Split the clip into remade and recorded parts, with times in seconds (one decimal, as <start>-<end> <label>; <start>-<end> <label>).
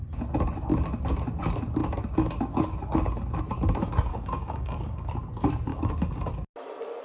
0.0-4.1 recorded; 4.1-5.1 remade; 5.1-5.7 recorded; 5.7-6.3 remade; 6.3-7.0 recorded